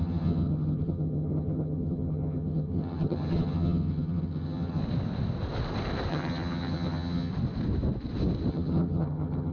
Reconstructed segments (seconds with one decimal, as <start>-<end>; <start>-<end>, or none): 0.0-4.8; 6.1-7.3; 8.5-9.5